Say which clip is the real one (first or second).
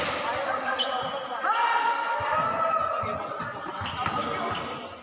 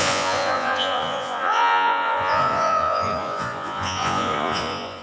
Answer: first